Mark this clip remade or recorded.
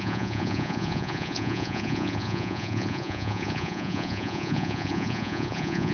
remade